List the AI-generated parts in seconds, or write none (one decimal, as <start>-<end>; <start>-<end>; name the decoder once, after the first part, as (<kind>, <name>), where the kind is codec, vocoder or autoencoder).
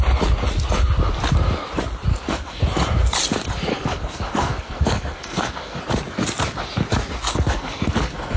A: 2.1-2.6 (codec, SNAC); 3.7-5.8; 7.3-8.4